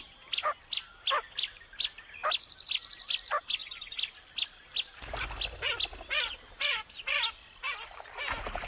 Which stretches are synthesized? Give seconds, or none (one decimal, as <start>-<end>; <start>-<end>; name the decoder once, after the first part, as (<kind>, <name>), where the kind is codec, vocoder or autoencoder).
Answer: none